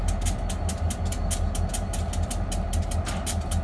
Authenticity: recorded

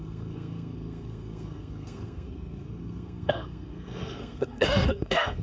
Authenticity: remade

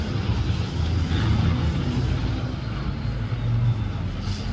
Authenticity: recorded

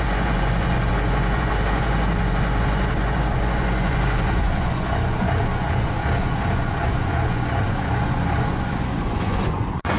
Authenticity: remade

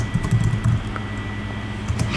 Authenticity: recorded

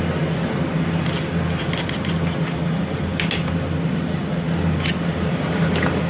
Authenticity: recorded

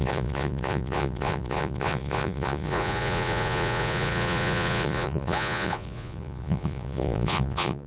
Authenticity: remade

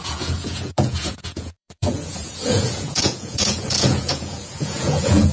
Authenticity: remade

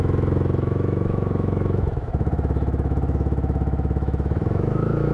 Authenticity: remade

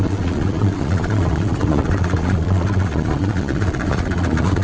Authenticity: remade